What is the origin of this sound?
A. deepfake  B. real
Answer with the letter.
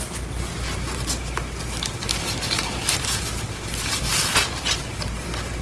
B